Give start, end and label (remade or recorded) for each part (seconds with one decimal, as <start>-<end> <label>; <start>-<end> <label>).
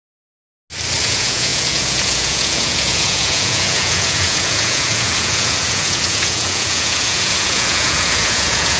0.0-1.0 recorded; 1.0-8.8 remade